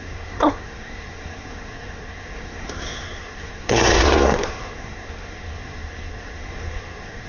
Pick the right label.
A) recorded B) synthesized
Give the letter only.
B